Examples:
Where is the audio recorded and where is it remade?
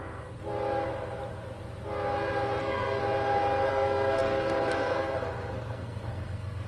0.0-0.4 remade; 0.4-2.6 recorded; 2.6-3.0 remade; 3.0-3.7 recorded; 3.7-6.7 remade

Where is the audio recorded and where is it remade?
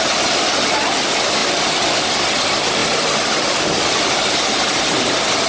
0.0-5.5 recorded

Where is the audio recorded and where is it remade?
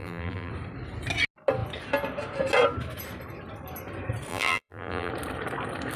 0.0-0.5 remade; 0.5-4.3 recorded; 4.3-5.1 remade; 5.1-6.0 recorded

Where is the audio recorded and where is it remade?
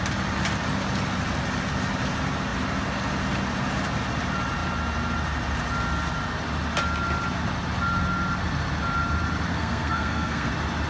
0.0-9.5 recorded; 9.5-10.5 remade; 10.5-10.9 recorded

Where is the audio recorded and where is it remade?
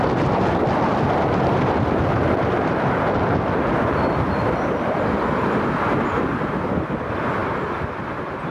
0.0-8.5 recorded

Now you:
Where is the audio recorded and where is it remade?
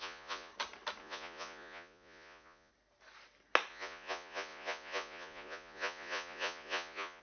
0.0-0.5 remade; 0.5-1.0 recorded; 1.0-2.7 remade; 2.7-3.7 recorded; 3.7-7.2 remade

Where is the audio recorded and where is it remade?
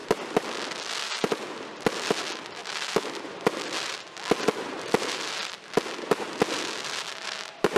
0.0-7.8 recorded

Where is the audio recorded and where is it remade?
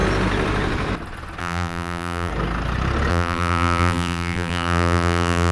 0.0-1.4 recorded; 1.4-2.3 remade; 2.3-3.1 recorded; 3.1-5.5 remade